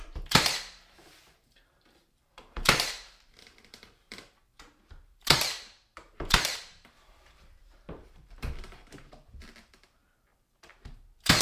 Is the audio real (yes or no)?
no